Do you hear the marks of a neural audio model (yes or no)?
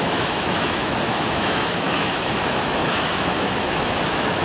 yes